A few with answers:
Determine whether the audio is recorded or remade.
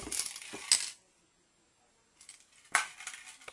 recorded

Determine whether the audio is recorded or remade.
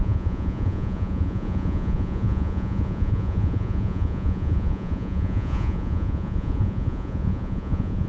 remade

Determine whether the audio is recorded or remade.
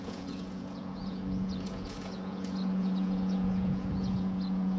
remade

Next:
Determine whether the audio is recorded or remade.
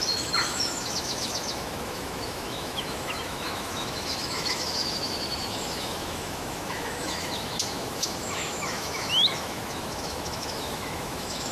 remade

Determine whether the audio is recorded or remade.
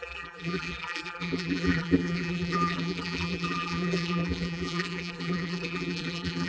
remade